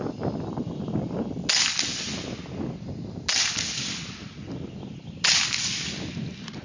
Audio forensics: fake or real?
real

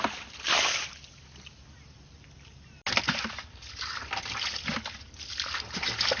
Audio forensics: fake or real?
real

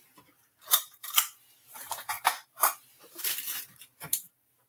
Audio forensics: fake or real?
fake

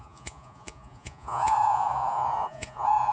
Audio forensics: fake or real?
fake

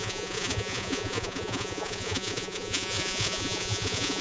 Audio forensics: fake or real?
fake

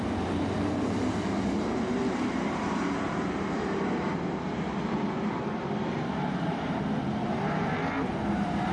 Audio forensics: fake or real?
fake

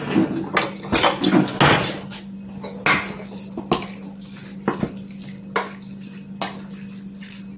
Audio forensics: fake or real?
real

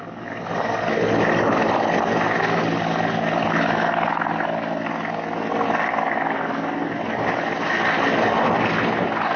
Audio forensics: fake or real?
real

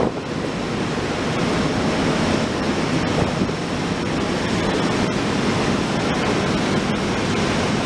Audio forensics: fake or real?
real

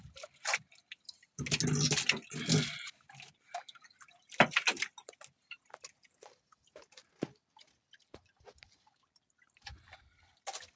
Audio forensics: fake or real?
real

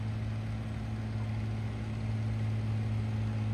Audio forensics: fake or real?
real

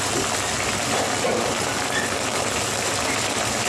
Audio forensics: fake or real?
real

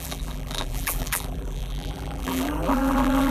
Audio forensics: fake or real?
fake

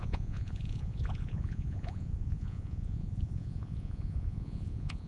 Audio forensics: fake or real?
fake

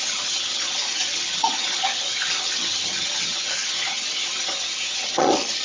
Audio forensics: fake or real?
fake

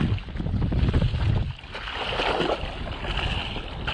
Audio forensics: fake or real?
real